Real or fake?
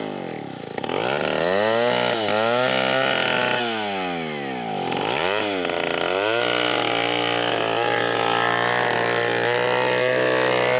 real